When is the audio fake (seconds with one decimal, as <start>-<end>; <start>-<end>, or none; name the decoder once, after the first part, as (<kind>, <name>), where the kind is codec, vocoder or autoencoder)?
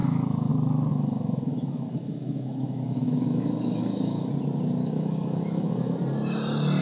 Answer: 0.0-0.5 (autoencoder, DAC-VAE); 0.9-4.3; 4.8-6.0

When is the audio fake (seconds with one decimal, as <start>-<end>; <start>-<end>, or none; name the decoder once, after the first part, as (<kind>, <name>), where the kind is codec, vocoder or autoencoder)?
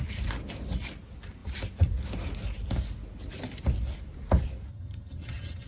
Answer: 4.7-5.7 (vocoder, HiFi-GAN)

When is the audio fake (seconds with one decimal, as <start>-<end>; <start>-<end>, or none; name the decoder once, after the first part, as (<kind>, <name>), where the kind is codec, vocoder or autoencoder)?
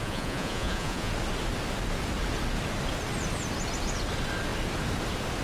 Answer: 0.0-1.1 (vocoder, Vocos)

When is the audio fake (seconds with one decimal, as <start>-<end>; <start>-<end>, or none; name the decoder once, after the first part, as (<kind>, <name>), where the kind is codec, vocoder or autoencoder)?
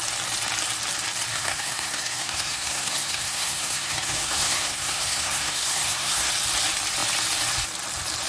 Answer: 1.3-6.3 (codec, SNAC)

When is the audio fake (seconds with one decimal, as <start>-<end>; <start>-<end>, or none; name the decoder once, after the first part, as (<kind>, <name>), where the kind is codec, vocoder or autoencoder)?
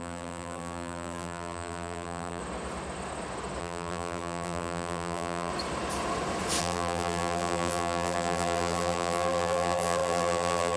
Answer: 0.0-2.4 (vocoder, BigVGAN v2); 3.6-5.5; 6.6-10.8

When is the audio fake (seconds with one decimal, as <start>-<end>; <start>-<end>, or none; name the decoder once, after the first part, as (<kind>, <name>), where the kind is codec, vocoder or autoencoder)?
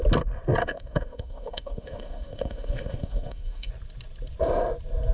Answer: 0.6-3.7 (autoencoder, DAC-VAE)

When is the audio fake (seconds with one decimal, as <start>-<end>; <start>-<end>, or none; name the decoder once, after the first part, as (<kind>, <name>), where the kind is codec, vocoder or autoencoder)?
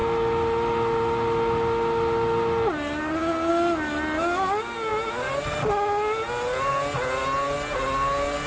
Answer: none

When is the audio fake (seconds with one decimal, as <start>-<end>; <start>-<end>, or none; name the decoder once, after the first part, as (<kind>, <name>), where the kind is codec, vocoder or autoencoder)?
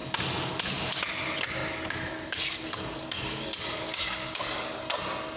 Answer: 1.6-4.8 (codec, DAC)